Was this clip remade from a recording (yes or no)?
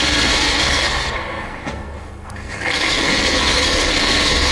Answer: yes